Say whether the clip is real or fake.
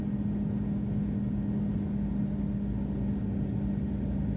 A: real